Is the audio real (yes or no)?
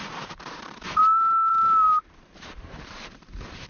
no